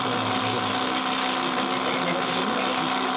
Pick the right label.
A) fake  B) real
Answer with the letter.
B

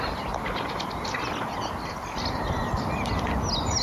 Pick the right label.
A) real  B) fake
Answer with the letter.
A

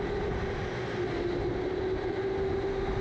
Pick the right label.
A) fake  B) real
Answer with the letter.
B